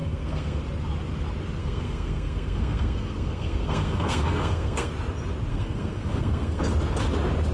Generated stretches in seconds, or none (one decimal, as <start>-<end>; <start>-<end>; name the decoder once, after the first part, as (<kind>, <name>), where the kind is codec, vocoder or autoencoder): 0.0-0.6 (codec, SNAC); 1.6-4.9; 5.5-6.6